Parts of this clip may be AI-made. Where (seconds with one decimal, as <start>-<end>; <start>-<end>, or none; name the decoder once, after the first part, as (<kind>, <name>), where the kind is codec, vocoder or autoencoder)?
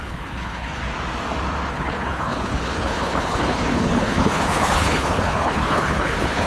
0.0-0.8 (codec, HILCodec); 1.7-6.5